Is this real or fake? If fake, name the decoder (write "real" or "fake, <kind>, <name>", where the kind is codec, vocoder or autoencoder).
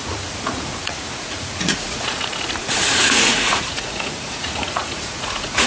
fake, vocoder, Vocos